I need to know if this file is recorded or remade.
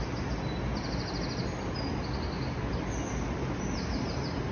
recorded